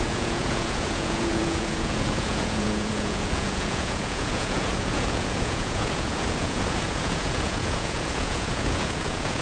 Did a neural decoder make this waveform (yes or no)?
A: yes